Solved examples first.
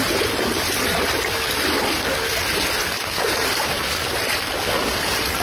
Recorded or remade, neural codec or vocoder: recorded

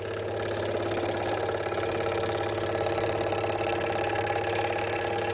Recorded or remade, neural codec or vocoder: recorded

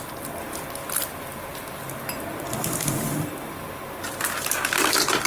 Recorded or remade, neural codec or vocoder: recorded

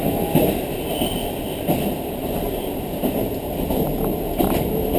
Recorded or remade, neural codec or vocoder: recorded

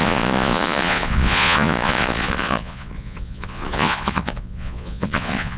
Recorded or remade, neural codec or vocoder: remade, vocoder, Vocos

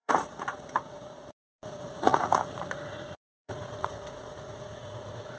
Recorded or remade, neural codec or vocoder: remade, vocoder, Vocos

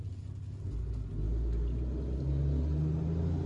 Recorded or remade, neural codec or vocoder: recorded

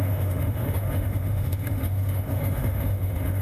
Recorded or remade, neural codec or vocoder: remade, autoencoder, DAC-VAE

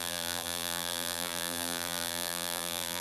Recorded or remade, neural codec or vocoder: remade, vocoder, BigVGAN v2